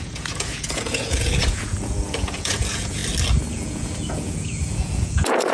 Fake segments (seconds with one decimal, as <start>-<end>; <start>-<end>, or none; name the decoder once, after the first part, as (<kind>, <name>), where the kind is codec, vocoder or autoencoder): 0.0-3.0 (vocoder, Vocos); 3.5-5.5